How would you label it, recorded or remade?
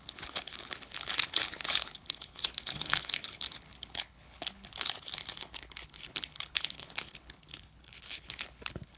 remade